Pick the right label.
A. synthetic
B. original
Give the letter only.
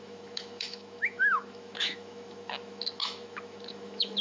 A